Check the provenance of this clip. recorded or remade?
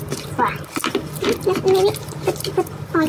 recorded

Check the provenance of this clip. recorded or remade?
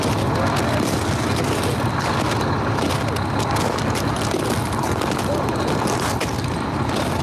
recorded